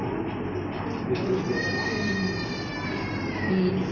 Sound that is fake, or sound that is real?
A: real